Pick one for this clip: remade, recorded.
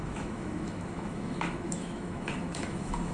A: remade